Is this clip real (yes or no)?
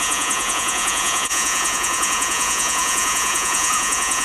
no